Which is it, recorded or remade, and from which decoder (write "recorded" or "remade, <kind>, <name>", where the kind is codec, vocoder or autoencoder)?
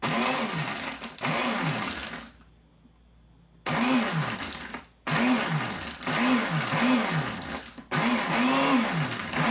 recorded